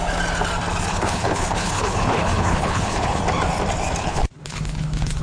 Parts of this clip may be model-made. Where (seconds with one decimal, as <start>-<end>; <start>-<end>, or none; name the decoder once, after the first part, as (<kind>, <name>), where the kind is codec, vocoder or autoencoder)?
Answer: 0.9-3.2 (codec, HILCodec); 4.0-5.2